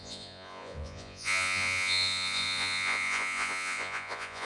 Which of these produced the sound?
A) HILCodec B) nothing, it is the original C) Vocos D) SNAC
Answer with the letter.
C